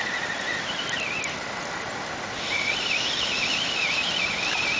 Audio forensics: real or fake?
real